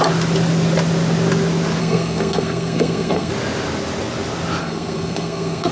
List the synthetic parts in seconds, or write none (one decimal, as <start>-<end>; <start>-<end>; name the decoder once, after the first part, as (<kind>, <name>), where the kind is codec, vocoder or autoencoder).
1.8-3.3 (codec, SNAC); 4.6-5.7